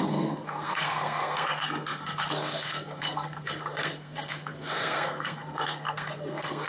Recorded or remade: remade